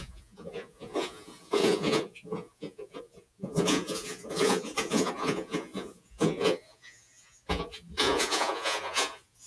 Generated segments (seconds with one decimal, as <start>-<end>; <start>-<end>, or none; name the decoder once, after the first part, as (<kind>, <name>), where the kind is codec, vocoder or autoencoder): 0.0-9.5 (vocoder, Vocos)

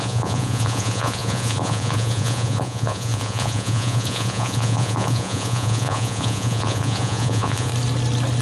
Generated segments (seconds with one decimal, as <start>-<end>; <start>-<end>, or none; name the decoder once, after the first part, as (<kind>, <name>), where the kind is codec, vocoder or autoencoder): 0.0-7.7 (vocoder, Vocos)